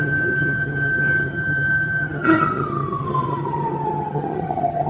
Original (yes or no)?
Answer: no